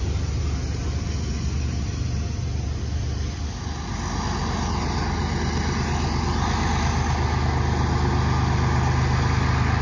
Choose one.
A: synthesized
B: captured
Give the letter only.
B